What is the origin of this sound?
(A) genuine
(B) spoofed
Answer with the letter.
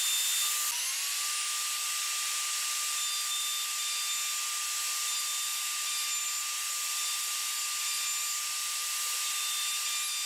A